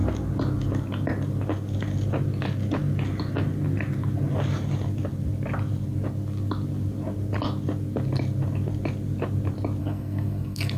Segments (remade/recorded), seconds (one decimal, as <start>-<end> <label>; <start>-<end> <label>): 0.0-9.8 recorded; 9.8-10.8 remade